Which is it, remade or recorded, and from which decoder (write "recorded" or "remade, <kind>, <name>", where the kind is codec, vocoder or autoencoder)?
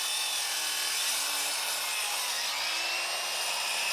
recorded